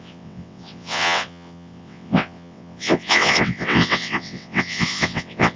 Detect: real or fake fake